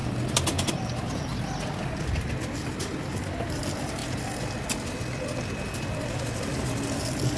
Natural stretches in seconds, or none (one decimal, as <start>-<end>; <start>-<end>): 0.0-0.7; 1.3-2.9; 4.0-7.4